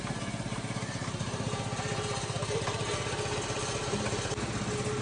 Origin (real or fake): real